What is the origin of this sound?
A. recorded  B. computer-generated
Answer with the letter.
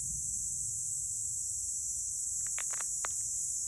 A